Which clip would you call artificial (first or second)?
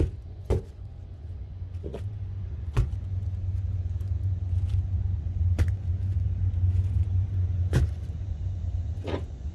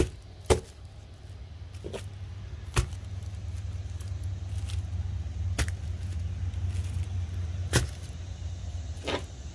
first